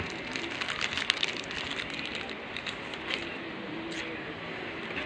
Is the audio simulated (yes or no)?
no